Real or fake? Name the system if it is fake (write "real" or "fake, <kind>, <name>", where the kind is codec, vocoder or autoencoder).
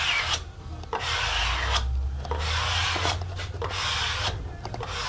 real